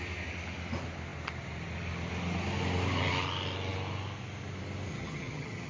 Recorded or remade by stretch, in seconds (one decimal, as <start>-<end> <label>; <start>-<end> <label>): 0.0-4.9 recorded; 4.9-5.7 remade